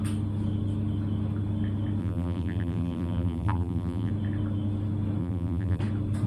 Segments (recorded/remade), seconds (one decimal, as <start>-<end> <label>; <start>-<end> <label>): 0.0-2.0 recorded; 2.0-4.1 remade; 4.1-5.2 recorded; 5.2-5.8 remade; 5.8-6.3 recorded